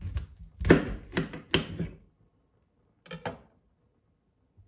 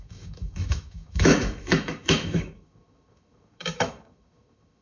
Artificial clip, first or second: second